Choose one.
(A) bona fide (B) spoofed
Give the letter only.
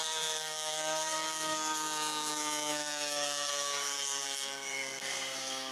B